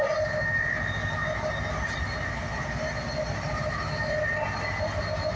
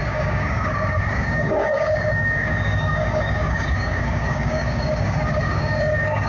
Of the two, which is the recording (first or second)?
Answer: first